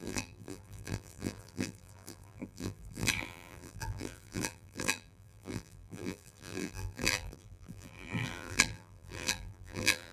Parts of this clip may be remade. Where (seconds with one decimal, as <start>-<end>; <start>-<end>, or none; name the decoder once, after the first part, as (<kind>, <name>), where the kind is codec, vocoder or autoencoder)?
0.0-10.1 (vocoder, BigVGAN v2)